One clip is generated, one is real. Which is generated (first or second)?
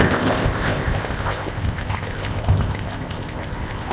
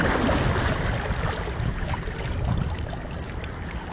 first